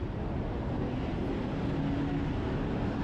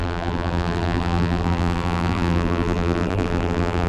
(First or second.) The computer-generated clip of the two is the second